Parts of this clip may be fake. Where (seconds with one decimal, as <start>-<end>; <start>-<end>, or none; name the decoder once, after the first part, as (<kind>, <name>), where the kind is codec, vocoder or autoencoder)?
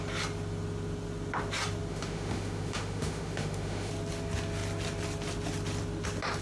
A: 1.9-3.9 (autoencoder, DAC-VAE)